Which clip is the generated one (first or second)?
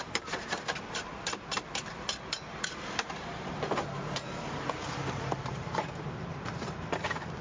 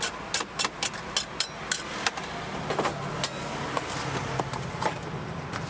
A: first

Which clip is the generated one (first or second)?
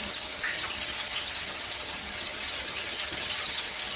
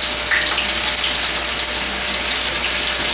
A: first